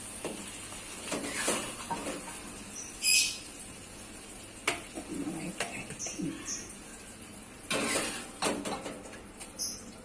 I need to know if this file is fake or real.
real